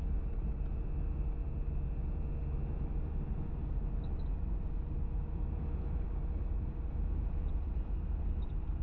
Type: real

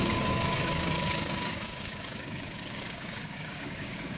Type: fake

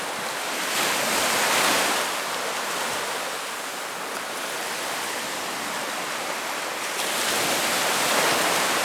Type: real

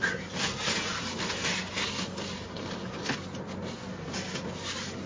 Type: real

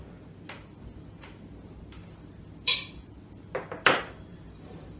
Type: real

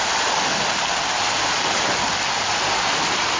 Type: real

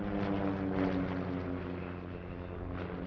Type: real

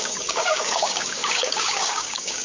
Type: fake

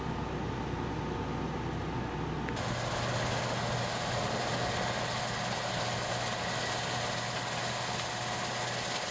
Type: real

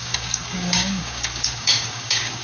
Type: fake